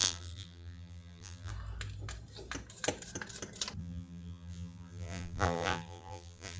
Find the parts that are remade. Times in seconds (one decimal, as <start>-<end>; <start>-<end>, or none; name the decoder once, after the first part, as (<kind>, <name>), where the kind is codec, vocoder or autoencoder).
0.0-1.5 (vocoder, BigVGAN v2); 3.8-6.6